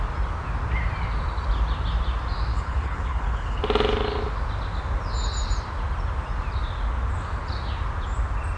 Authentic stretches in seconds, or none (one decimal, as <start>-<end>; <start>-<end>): 0.0-2.5; 3.6-8.6